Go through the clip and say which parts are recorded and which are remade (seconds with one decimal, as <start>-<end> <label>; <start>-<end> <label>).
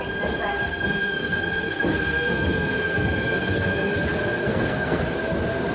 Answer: 0.0-0.5 recorded; 0.5-3.9 remade; 3.9-4.4 recorded; 4.4-5.0 remade; 5.0-5.7 recorded